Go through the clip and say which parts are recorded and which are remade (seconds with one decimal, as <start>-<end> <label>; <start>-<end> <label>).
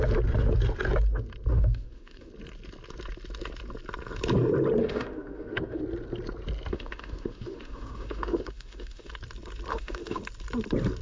0.0-1.5 recorded; 1.5-2.3 remade; 2.3-4.8 recorded; 4.8-5.8 remade; 5.8-6.7 recorded; 6.7-9.1 remade; 9.1-9.7 recorded; 9.7-10.2 remade; 10.2-11.0 recorded